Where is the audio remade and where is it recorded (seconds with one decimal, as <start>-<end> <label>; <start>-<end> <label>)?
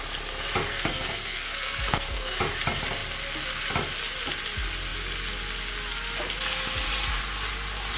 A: 0.0-0.7 recorded; 0.7-2.4 remade; 2.4-8.0 recorded